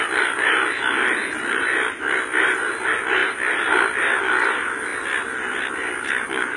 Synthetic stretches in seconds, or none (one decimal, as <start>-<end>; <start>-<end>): none